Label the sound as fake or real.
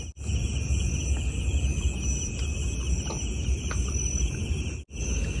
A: real